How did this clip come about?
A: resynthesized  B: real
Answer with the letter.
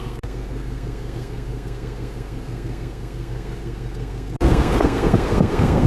A